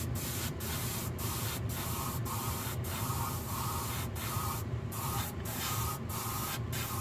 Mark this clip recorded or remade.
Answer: remade